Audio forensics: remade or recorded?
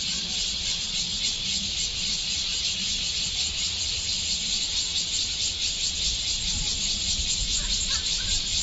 remade